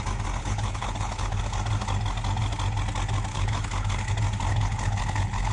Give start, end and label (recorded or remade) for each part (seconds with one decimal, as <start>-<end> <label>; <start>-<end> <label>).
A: 0.0-0.4 recorded; 0.4-1.4 remade; 1.4-3.3 recorded; 3.3-4.1 remade; 4.1-4.5 recorded; 4.5-5.5 remade